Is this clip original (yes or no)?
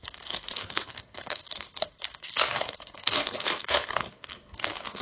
no